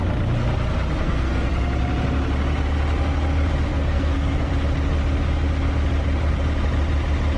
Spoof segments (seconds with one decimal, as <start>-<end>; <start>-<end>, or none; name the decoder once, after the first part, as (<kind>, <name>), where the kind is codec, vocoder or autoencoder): 1.0-1.5 (codec, SNAC); 3.7-4.5